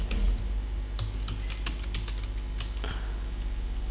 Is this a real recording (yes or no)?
yes